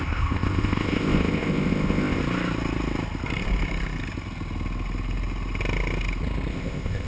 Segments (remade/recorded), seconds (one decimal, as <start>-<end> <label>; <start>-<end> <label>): 0.0-2.2 remade; 2.2-6.5 recorded; 6.5-7.1 remade